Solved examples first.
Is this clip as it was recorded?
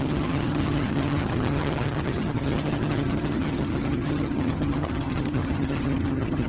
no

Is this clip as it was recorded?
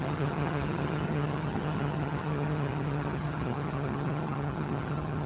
no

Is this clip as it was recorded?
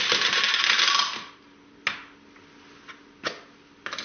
yes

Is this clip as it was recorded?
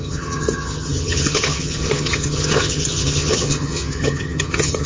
no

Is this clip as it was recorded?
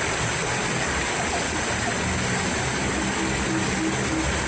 yes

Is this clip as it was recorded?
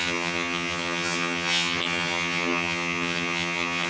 no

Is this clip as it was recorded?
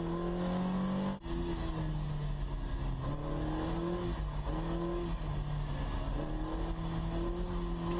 yes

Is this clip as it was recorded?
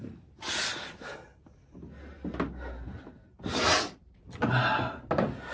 yes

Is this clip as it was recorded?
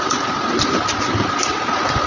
yes